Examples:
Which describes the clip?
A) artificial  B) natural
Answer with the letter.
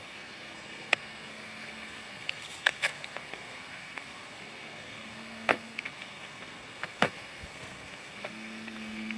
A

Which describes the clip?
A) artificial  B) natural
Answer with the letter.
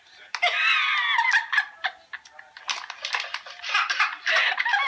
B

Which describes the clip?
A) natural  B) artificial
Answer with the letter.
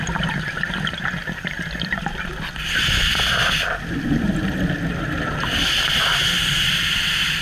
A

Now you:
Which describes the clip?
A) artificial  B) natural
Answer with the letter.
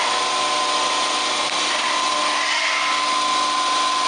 B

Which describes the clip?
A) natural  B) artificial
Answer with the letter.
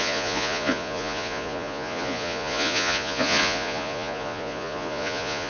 B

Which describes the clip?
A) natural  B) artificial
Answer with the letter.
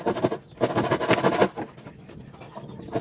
A